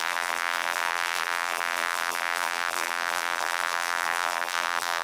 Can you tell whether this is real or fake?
fake